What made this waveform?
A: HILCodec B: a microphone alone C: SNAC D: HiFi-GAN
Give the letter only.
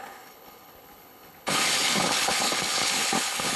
A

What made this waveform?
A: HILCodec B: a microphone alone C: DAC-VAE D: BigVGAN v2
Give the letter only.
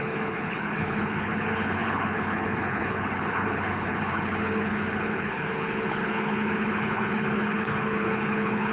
A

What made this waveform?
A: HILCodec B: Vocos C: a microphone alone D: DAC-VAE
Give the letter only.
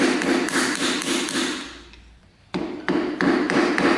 C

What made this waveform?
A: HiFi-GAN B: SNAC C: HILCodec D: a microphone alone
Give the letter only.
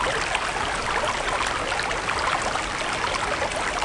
D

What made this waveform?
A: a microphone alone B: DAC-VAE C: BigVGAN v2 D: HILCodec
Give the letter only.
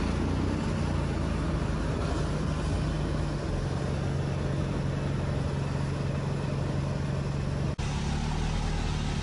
A